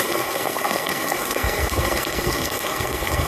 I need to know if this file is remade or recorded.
remade